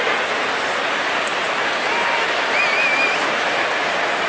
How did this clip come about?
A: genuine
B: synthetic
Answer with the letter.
A